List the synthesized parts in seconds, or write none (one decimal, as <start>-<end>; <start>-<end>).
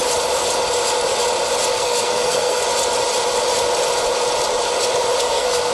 1.7-2.6; 5.2-5.7